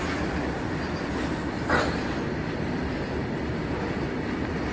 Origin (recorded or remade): recorded